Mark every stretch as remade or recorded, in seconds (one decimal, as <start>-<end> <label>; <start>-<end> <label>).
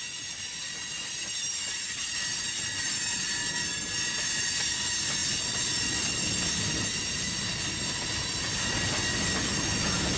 0.0-5.2 recorded; 5.2-5.8 remade; 5.8-10.2 recorded